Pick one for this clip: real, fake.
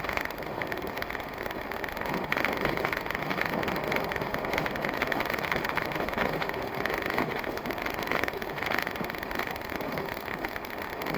fake